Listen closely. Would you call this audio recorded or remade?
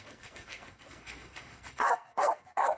remade